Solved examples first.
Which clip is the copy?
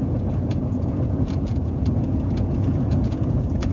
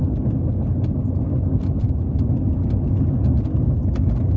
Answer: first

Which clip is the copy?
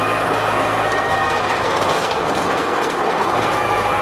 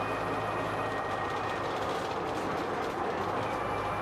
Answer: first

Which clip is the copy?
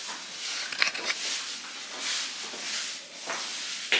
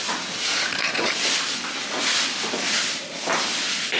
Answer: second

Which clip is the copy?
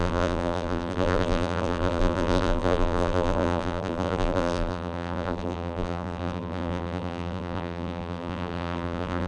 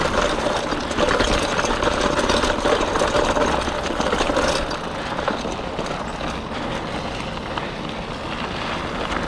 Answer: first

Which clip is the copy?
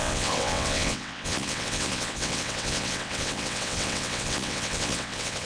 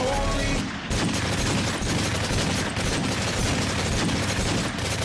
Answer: first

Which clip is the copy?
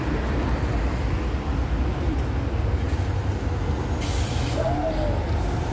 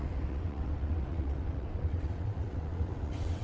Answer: second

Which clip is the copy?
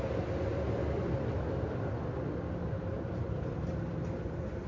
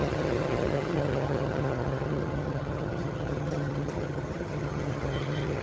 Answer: second